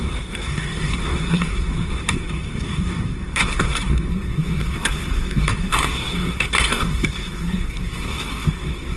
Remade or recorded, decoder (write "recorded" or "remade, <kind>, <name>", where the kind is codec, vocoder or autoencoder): remade, codec, SNAC